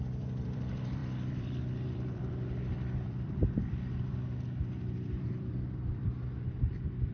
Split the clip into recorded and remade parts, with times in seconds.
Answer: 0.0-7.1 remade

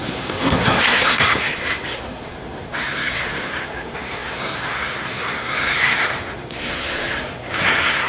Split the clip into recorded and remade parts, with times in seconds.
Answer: 0.0-8.1 remade

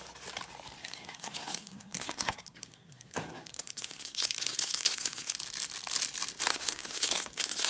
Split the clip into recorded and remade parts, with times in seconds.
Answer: 0.0-0.8 recorded; 0.8-5.4 remade; 5.4-6.5 recorded; 6.5-7.7 remade

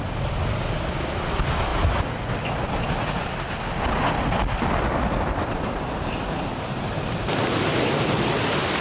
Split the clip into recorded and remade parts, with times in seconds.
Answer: 0.0-8.8 recorded

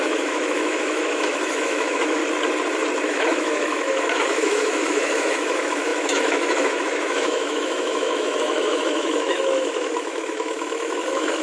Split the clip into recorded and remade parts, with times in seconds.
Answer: 0.0-2.2 remade; 2.2-3.1 recorded; 3.1-11.4 remade